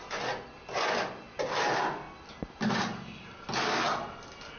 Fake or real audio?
real